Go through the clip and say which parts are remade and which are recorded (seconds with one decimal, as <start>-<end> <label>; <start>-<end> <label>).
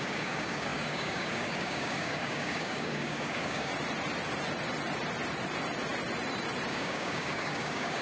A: 0.0-3.7 remade; 3.7-6.7 recorded; 6.7-8.0 remade